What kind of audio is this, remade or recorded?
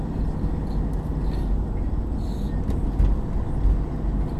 recorded